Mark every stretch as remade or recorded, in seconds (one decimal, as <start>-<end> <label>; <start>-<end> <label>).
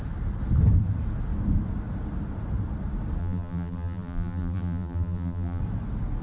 0.0-3.2 recorded; 3.2-5.6 remade; 5.6-6.2 recorded